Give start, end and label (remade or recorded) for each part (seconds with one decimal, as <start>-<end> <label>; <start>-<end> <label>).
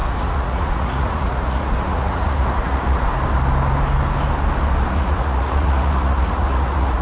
0.0-3.1 remade; 3.1-4.9 recorded; 4.9-7.0 remade